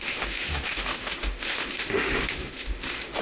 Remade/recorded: remade